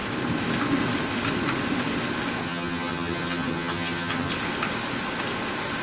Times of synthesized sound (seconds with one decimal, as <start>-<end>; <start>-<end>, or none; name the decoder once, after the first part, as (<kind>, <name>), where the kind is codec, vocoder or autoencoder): 2.4-4.3 (vocoder, HiFi-GAN)